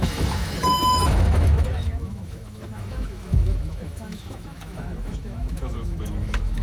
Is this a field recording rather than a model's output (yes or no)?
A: no